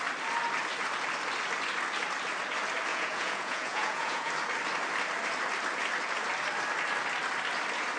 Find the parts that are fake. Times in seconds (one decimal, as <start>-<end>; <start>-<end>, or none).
2.9-4.3